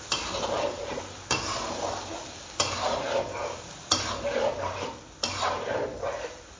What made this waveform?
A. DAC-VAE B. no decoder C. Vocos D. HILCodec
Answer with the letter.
B